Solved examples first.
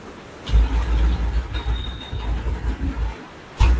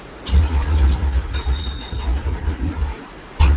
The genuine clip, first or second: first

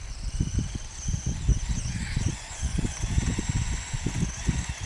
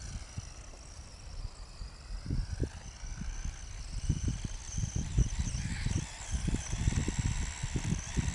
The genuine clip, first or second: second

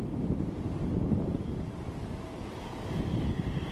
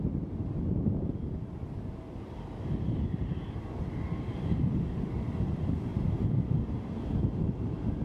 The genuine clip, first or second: second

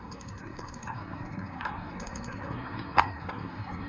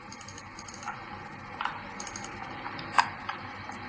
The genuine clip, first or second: second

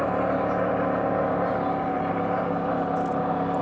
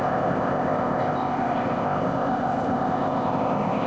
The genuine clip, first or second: first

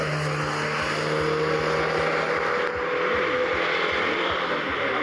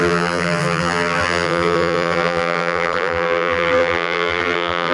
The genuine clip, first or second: first